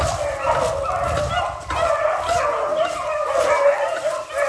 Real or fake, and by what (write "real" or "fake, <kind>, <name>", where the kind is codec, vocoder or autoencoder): real